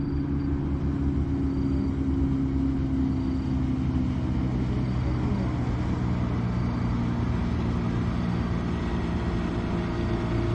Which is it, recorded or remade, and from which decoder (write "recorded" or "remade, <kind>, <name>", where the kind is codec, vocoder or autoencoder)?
recorded